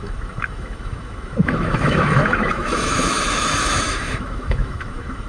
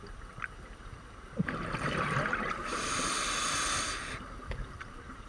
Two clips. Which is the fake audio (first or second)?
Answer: first